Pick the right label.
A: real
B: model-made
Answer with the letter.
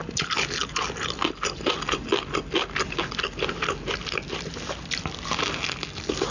A